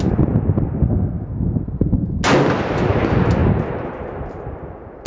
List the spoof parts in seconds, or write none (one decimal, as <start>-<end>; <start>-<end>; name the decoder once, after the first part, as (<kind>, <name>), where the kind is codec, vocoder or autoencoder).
0.8-2.2 (codec, SNAC)